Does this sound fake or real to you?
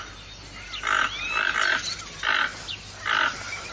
real